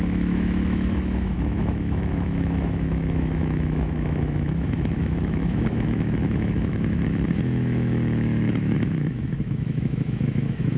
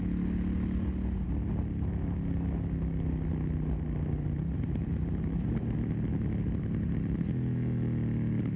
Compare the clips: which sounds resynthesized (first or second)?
first